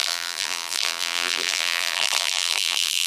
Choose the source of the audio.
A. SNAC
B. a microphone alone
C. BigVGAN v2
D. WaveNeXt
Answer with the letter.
C